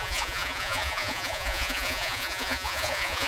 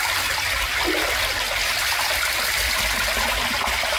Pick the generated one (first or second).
first